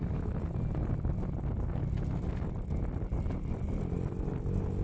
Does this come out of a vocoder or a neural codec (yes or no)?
no